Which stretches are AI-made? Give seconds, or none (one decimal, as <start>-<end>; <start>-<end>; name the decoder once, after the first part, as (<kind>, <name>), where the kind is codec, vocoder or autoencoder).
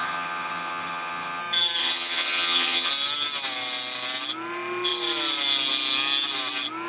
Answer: 0.0-1.4 (vocoder, HiFi-GAN); 1.8-2.9